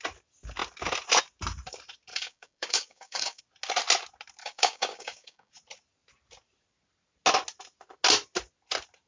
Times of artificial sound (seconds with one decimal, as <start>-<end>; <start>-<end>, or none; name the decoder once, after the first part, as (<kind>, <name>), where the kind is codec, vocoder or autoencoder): 2.1-3.4 (codec, DAC); 4.4-5.5